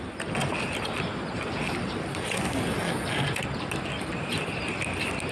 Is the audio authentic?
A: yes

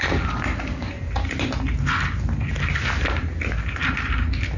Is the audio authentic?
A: yes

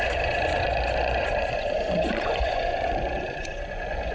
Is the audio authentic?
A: no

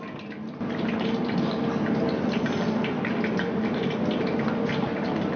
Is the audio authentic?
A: yes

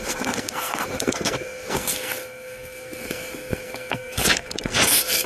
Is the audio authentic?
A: no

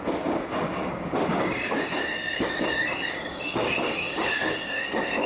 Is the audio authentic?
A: no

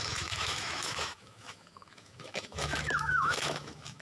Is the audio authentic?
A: no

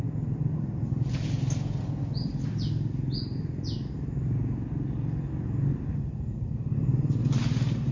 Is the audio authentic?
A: yes